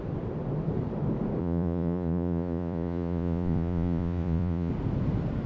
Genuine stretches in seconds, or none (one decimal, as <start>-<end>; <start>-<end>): 0.0-1.4; 4.7-5.5

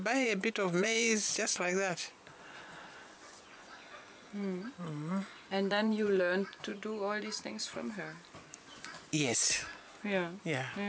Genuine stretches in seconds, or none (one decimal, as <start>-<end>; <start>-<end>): 6.7-8.4; 9.7-10.9

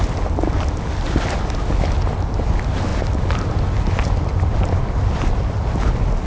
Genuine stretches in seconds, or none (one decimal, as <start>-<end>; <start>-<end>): 0.0-6.3

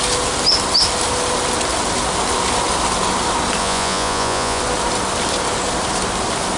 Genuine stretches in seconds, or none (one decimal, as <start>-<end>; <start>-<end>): 0.0-3.6; 4.6-6.6

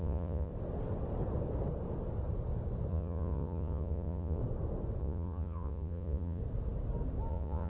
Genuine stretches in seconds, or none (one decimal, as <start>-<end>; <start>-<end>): 0.5-2.9; 4.4-5.0; 6.4-7.3